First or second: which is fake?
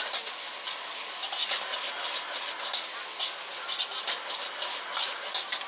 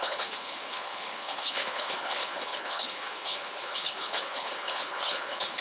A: second